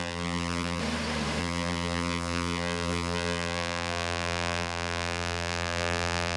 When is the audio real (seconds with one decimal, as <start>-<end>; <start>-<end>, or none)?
0.8-1.4